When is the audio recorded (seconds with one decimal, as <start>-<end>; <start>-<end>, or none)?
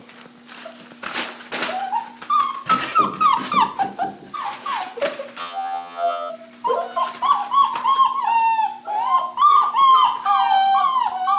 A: 0.0-5.4; 6.3-11.4